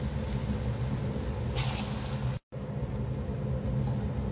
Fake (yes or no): no